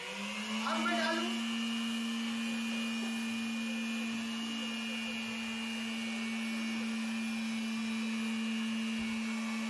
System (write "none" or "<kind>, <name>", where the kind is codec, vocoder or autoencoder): none